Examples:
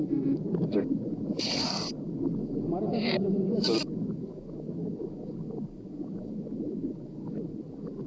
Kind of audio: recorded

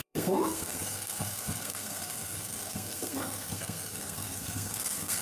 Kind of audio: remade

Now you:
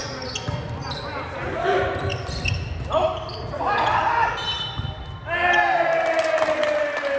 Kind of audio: recorded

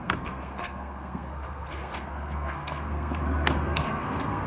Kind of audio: remade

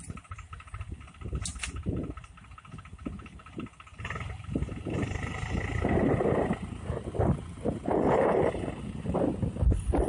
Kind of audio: recorded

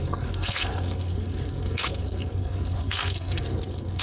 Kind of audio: remade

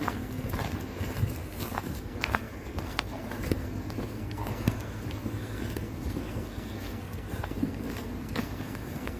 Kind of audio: remade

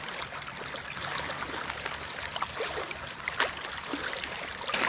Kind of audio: recorded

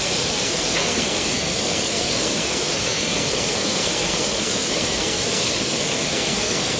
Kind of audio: remade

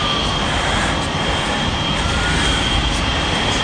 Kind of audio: recorded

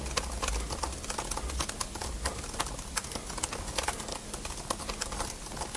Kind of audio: recorded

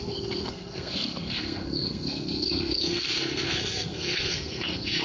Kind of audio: remade